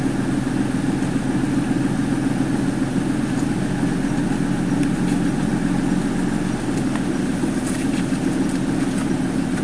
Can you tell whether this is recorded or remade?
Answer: recorded